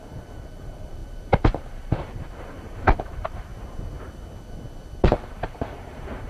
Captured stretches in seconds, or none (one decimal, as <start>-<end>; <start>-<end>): 3.5-5.1